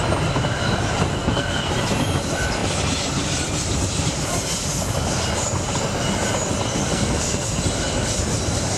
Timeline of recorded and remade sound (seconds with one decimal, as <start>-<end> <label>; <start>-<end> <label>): 0.0-1.1 recorded; 1.1-1.7 remade; 1.7-6.8 recorded; 6.8-7.6 remade; 7.6-8.8 recorded